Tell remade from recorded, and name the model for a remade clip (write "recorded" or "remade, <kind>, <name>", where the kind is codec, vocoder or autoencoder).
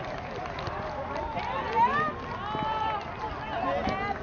recorded